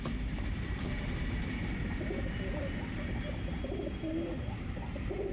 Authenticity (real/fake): fake